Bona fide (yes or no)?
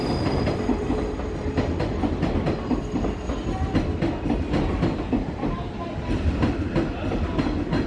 yes